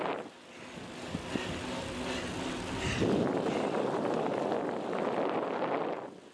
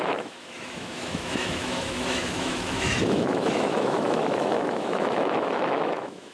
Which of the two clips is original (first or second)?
first